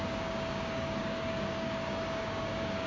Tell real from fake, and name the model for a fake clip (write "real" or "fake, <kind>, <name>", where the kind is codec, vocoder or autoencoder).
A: fake, codec, DAC